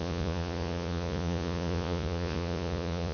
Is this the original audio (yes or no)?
no